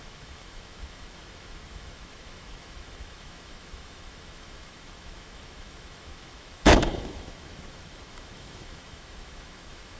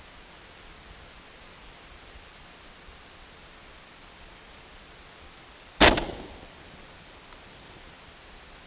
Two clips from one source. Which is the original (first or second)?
second